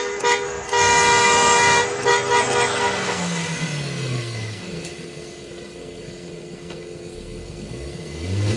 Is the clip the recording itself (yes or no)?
no